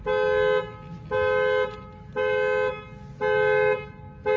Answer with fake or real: real